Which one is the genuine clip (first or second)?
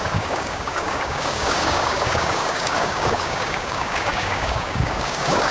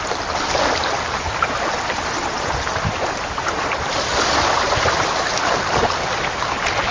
second